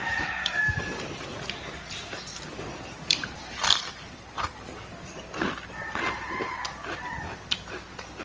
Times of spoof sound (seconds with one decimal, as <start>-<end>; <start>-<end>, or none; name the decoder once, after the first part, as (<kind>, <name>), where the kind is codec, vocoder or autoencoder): 0.0-0.6 (vocoder, BigVGAN v2)